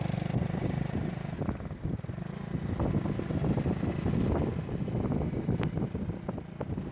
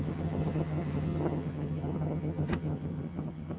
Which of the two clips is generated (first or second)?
second